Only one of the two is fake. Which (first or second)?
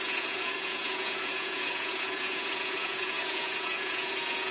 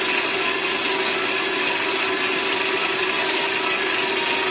first